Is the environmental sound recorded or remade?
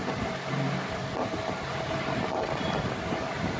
recorded